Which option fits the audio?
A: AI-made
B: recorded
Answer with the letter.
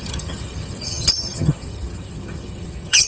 A